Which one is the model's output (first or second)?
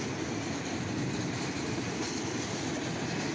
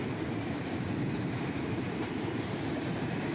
second